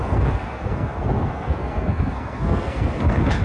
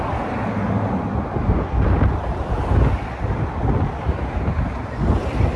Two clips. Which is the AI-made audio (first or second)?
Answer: first